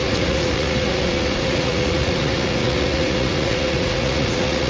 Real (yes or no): no